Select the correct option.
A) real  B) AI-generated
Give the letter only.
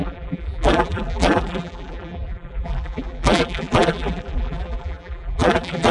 B